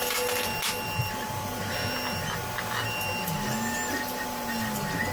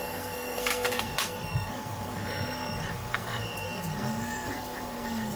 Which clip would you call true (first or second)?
first